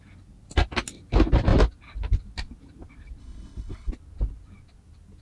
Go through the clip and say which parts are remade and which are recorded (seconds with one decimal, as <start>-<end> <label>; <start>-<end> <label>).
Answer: 0.0-3.2 recorded; 3.2-3.9 remade; 3.9-5.2 recorded